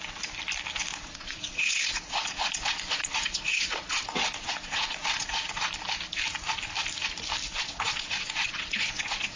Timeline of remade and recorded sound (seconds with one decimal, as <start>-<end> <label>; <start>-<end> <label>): 0.0-0.9 recorded; 0.9-5.7 remade; 5.7-7.5 recorded; 7.5-9.4 remade